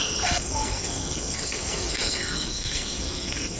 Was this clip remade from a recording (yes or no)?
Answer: yes